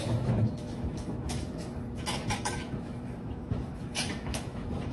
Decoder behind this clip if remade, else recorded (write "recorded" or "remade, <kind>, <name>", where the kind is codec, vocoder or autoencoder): remade, autoencoder, DAC-VAE